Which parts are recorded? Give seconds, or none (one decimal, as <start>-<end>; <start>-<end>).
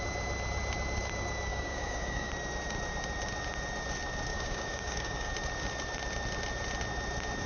0.0-1.5; 2.3-4.3; 5.3-7.5